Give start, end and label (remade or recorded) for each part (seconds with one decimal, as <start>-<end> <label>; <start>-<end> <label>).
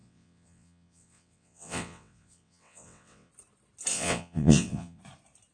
0.0-3.3 remade; 3.3-3.9 recorded; 3.9-5.0 remade; 5.0-5.5 recorded